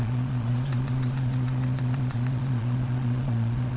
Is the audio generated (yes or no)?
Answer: yes